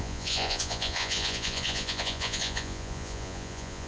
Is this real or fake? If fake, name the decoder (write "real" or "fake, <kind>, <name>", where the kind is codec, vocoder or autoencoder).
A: fake, vocoder, Vocos